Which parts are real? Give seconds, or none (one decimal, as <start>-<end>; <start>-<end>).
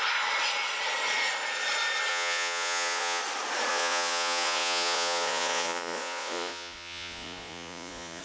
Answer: 0.0-2.1; 3.2-3.7